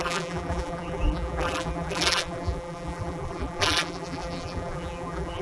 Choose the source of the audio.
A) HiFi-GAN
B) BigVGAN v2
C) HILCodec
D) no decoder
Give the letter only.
B